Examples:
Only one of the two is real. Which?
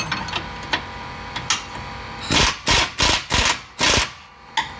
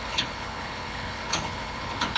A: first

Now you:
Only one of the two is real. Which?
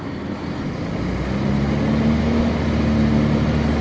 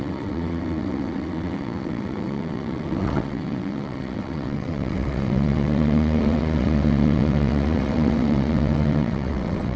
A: first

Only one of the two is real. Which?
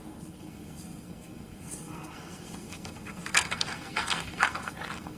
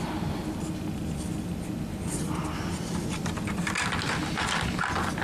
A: second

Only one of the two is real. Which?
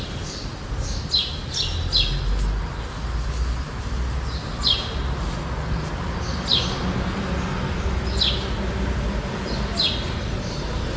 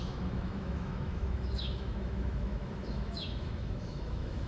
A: first